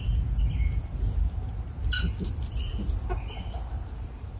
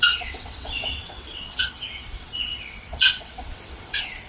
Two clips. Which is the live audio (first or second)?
first